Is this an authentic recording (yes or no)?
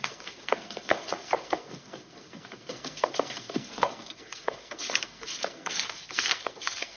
no